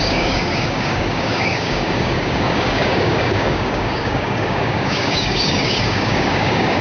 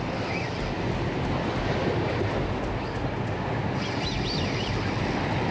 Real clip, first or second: second